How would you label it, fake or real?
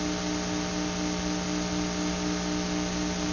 real